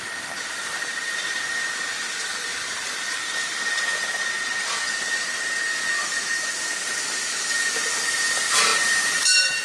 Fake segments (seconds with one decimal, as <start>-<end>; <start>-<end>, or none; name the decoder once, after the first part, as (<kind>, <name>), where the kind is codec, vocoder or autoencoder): 2.3-4.3 (vocoder, BigVGAN v2); 8.7-9.6